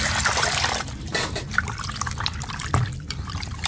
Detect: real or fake fake